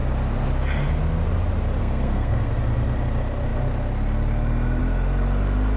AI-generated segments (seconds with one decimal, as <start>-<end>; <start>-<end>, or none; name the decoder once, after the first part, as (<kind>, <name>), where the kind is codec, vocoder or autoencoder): 1.8-2.5 (codec, SNAC)